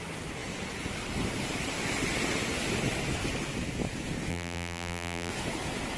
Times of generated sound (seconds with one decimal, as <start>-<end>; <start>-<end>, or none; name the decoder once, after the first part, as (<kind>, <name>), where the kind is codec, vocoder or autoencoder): 4.3-5.3 (vocoder, BigVGAN v2)